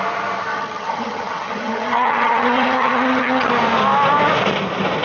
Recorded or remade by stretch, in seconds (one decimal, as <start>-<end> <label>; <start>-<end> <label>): 0.0-0.5 recorded; 0.5-3.5 remade; 3.5-5.0 recorded